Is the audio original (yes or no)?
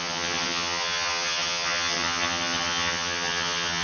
no